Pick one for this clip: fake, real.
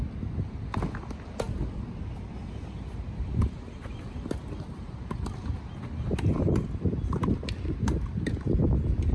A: real